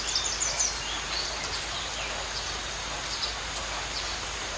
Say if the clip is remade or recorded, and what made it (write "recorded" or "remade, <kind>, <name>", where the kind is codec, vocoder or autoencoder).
recorded